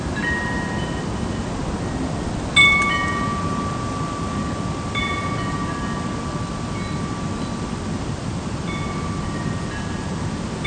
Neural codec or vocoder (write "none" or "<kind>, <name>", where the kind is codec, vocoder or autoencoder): none